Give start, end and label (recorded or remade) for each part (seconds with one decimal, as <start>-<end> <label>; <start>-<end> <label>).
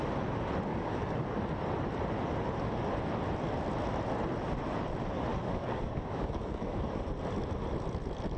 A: 0.0-0.7 recorded; 0.7-1.4 remade; 1.4-5.3 recorded; 5.3-7.0 remade; 7.0-8.4 recorded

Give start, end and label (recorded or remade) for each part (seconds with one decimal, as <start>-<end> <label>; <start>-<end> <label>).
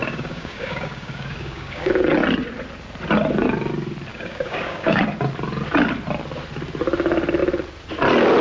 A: 0.0-1.9 remade; 1.9-4.1 recorded; 4.1-5.0 remade; 5.0-8.4 recorded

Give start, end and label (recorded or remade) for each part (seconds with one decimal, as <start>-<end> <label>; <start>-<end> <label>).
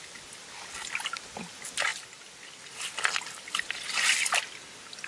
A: 0.0-5.1 recorded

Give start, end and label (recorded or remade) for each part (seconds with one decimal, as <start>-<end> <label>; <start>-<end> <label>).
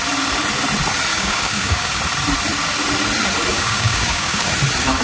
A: 0.0-1.1 recorded; 1.1-2.0 remade; 2.0-3.5 recorded; 3.5-4.5 remade; 4.5-5.0 recorded